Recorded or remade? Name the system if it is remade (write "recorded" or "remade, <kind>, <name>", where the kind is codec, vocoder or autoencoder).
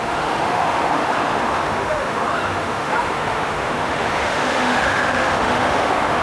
remade, autoencoder, DAC-VAE